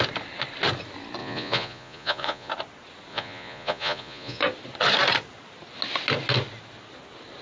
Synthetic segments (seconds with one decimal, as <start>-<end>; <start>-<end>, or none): 1.2-2.5; 3.1-4.4